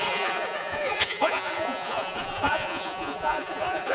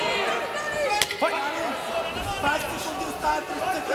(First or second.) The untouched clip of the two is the second